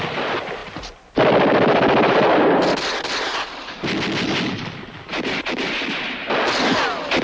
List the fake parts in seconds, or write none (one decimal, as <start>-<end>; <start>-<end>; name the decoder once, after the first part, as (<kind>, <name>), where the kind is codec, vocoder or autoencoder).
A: 5.1-5.7 (vocoder, BigVGAN v2)